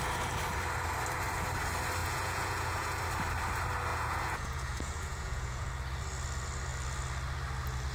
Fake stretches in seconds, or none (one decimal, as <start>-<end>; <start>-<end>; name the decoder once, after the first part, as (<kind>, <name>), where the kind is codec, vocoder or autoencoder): 2.0-3.0 (vocoder, Vocos); 3.9-5.7